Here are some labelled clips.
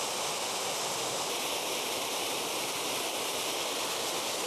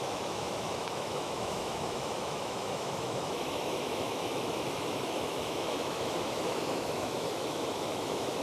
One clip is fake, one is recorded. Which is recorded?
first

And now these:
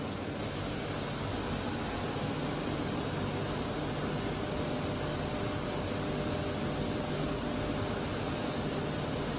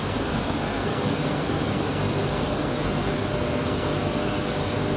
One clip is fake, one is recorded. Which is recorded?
first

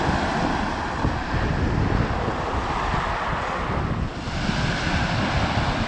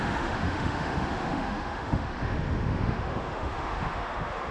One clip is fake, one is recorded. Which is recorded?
first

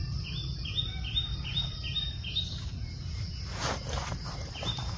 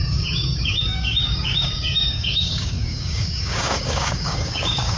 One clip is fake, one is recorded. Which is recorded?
first